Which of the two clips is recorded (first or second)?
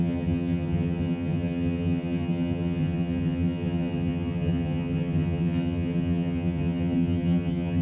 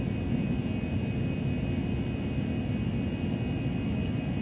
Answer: second